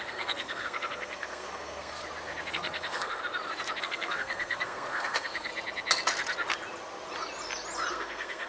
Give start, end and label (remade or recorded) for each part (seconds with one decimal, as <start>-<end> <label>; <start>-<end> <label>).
0.0-2.0 remade; 2.0-2.5 recorded; 2.5-3.2 remade; 3.2-3.8 recorded; 3.8-5.5 remade; 5.5-7.9 recorded; 7.9-8.5 remade